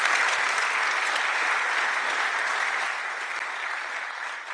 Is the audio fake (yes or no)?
no